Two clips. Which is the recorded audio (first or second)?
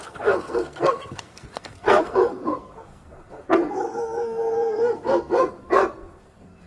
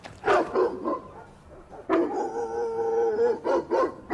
second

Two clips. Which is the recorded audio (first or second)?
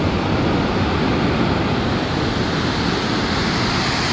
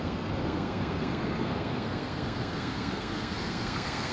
first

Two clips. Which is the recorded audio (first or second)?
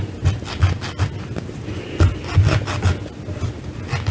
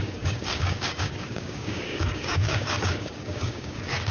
first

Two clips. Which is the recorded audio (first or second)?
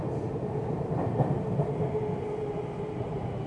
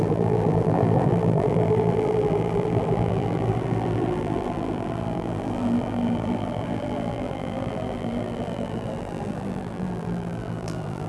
first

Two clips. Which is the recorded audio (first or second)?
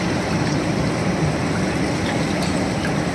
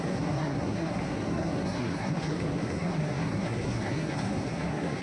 first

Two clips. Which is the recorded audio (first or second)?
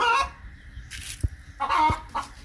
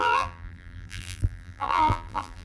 first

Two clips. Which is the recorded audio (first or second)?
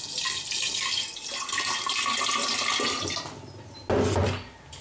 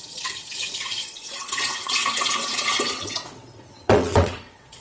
first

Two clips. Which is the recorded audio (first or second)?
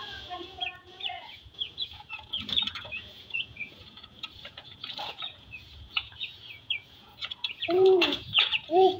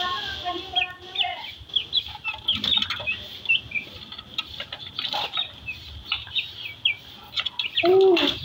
second